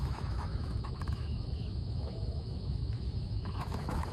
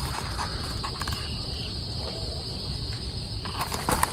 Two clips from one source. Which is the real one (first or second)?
second